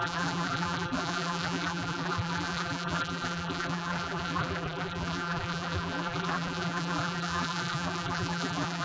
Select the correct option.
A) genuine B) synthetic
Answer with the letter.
B